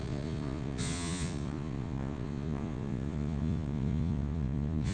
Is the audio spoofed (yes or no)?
yes